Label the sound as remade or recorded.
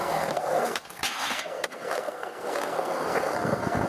remade